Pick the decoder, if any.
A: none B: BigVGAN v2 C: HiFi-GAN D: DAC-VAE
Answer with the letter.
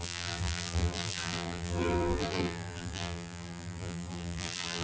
B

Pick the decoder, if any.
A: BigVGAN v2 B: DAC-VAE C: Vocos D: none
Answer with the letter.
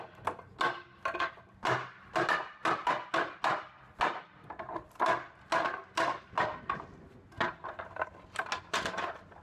D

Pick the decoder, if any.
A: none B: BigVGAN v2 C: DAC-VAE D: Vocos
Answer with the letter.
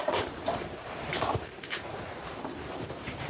B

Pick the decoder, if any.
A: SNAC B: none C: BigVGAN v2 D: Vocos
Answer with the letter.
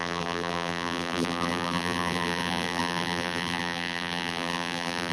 C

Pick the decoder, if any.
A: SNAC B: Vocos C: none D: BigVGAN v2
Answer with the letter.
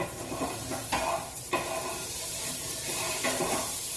D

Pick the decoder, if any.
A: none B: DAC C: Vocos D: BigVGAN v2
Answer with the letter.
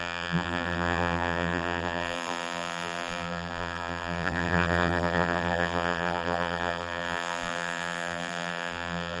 D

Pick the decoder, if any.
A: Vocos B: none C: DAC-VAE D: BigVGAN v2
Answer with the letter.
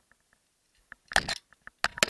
B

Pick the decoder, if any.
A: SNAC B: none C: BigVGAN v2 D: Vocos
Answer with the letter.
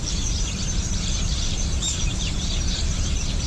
C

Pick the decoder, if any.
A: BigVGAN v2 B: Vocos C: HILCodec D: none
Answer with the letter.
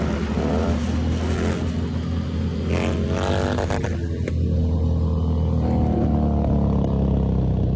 D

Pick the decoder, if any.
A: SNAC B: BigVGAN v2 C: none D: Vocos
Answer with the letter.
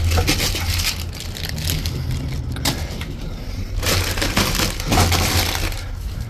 C